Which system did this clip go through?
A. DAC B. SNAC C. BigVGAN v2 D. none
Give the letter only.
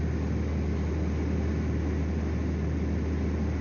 D